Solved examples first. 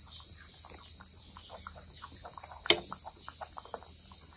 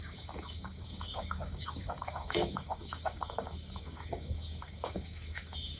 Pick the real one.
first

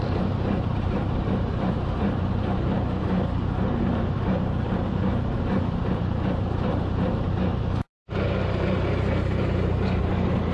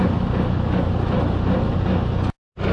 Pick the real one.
second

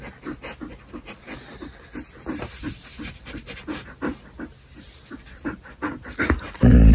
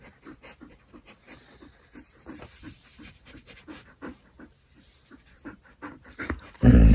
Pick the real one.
first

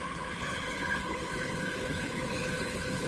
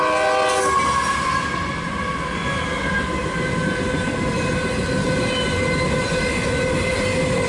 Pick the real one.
second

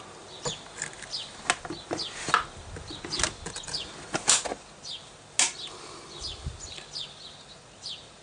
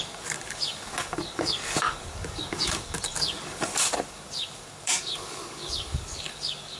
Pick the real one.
first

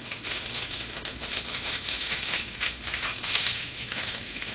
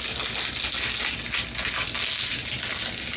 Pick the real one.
second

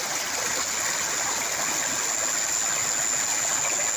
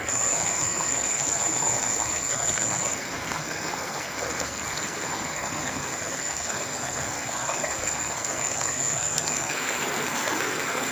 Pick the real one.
first